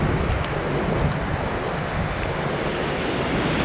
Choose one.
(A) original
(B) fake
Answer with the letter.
A